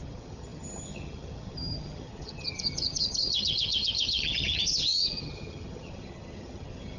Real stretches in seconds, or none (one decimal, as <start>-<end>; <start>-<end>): none